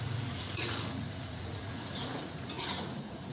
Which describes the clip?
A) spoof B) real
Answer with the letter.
A